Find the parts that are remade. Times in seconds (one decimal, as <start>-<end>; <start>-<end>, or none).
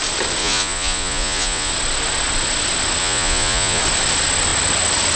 0.4-1.7; 3.0-3.8